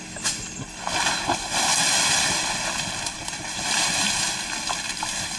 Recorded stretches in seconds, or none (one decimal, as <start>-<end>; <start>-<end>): 0.0-5.4